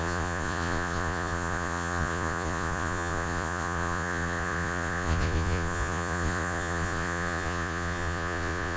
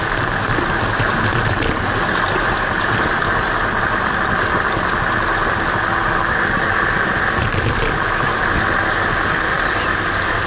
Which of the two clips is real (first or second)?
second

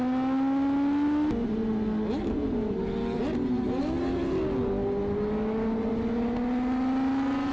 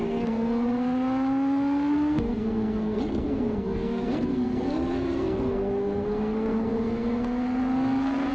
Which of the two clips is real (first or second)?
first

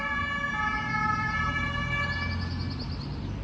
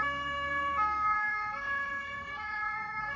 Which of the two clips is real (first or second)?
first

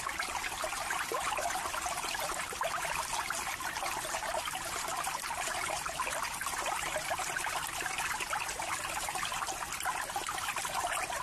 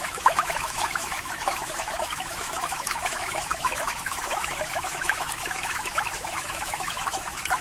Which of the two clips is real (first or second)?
first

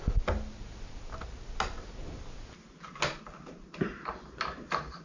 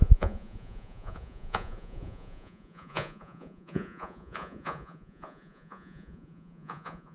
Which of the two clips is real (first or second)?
first